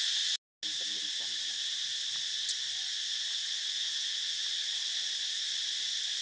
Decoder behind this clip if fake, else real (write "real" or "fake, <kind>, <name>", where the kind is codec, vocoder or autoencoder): real